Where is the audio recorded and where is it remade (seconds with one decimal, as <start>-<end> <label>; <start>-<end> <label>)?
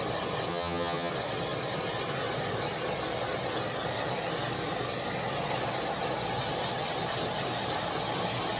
0.0-0.5 recorded; 0.5-1.1 remade; 1.1-8.6 recorded